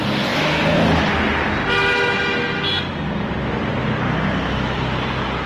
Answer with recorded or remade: recorded